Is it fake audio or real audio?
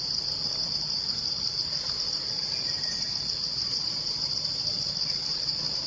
real